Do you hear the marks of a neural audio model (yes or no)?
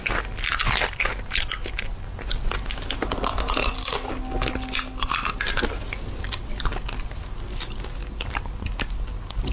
no